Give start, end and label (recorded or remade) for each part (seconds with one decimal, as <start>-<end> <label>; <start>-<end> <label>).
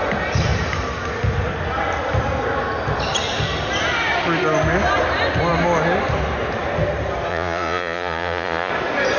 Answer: 0.0-7.3 recorded; 7.3-8.7 remade; 8.7-9.2 recorded